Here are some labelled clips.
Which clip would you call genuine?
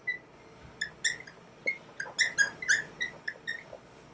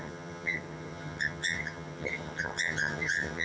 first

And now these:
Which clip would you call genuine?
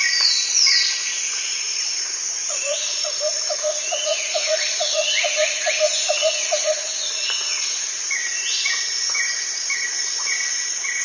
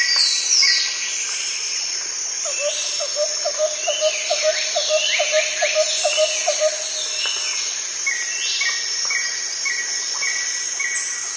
second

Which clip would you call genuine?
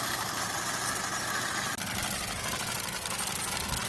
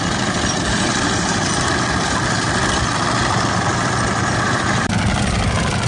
first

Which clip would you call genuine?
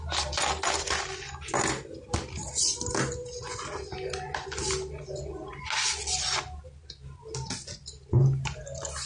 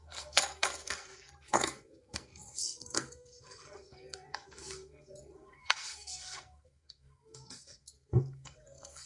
first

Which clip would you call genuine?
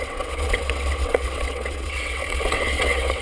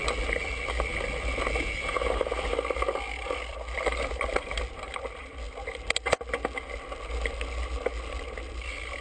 second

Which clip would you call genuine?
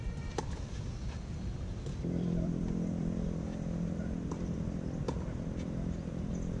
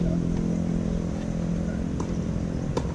second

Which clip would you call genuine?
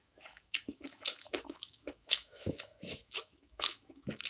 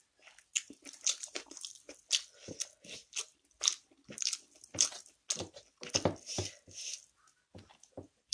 second